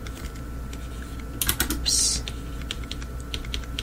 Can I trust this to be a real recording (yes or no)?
yes